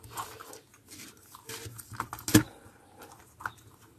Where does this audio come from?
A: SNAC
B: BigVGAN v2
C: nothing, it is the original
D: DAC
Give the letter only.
C